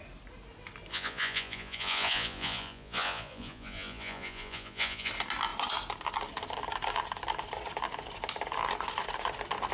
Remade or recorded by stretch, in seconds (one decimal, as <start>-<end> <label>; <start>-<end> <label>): 0.0-0.9 recorded; 0.9-5.1 remade; 5.1-9.7 recorded